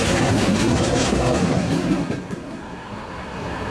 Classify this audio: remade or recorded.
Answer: remade